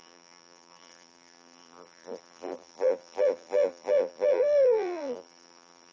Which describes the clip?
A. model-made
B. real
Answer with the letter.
A